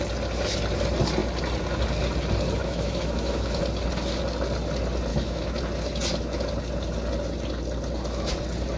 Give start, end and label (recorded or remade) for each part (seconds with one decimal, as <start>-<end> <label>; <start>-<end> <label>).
0.0-2.6 recorded; 2.6-3.6 remade; 3.6-5.1 recorded; 5.1-5.6 remade; 5.6-8.8 recorded